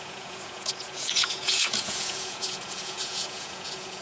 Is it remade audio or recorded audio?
remade